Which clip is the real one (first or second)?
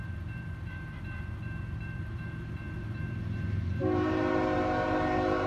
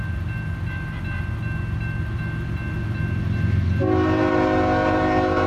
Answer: second